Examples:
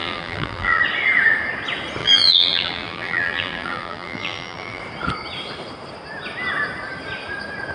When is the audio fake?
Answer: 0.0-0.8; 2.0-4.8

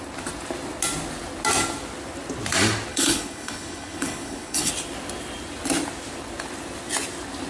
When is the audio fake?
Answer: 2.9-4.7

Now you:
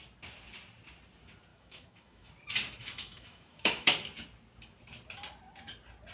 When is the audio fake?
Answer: 1.5-2.3; 2.8-3.9

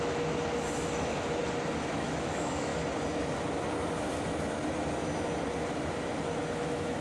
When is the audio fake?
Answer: 0.0-1.4; 1.9-2.7; 6.5-7.0

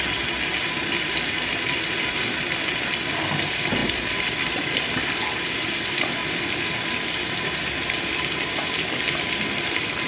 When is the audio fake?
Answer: none